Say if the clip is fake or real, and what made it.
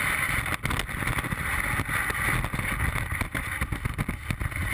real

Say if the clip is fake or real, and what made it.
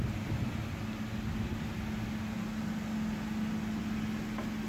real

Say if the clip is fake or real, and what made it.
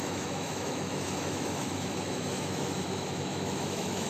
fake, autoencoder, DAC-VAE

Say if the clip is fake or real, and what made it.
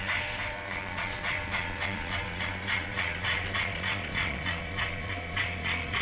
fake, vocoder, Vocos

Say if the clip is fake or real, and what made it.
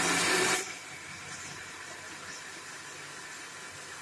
real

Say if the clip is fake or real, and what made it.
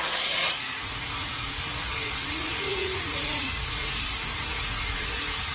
fake, vocoder, Vocos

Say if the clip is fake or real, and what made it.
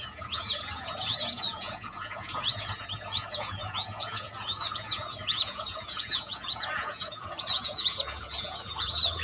fake, vocoder, Vocos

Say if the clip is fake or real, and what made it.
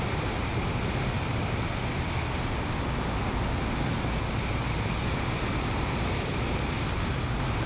real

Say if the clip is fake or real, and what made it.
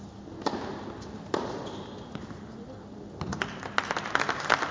real